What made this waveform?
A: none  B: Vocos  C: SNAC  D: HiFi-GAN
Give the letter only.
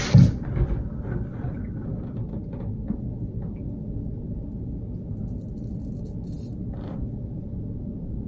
A